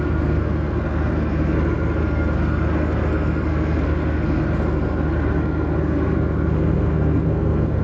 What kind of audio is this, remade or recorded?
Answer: remade